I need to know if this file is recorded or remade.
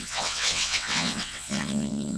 remade